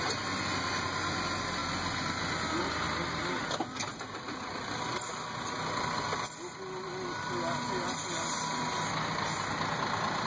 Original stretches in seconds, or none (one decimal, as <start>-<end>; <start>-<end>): 0.0-10.3